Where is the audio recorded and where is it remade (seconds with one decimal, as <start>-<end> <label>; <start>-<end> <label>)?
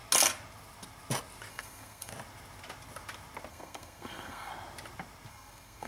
0.0-1.5 recorded; 1.5-2.1 remade; 2.1-3.5 recorded; 3.5-4.5 remade; 4.5-5.3 recorded; 5.3-5.9 remade